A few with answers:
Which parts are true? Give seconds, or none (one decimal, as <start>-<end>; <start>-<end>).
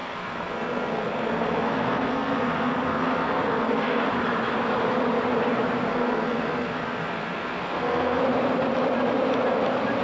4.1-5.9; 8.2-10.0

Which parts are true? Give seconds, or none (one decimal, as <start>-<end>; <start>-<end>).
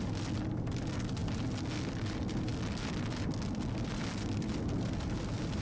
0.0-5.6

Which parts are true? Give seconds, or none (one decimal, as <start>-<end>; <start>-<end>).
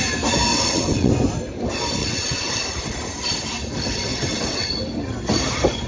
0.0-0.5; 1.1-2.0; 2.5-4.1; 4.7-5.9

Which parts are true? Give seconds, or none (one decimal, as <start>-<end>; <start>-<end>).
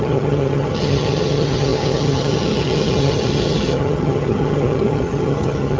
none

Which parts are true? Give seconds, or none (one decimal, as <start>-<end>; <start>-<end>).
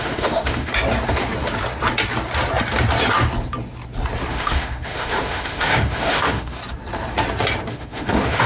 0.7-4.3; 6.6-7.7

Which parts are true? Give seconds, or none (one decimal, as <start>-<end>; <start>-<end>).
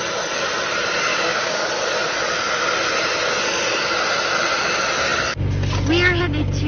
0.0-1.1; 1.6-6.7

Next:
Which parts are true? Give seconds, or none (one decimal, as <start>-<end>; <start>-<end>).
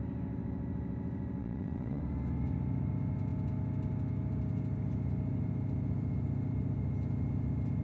0.0-1.4; 2.0-7.8